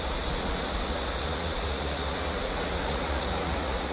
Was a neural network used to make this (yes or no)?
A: yes